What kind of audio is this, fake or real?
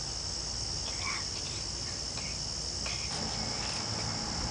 real